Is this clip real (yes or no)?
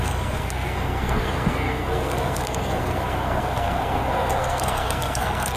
no